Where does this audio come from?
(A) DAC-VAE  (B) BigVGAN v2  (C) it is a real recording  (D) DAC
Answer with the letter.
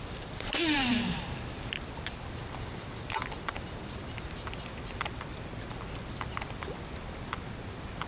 B